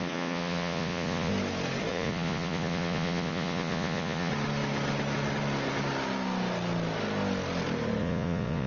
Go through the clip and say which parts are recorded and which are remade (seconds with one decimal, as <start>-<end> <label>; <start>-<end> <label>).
0.0-1.3 remade; 1.3-1.9 recorded; 1.9-4.3 remade; 4.3-8.0 recorded; 8.0-8.7 remade